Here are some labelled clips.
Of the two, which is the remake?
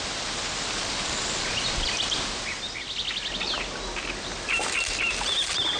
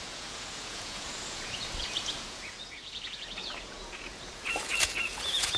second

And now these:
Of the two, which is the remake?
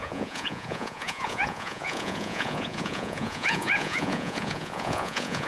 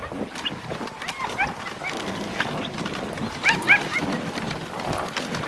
first